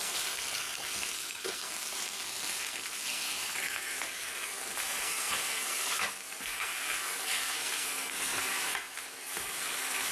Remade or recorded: remade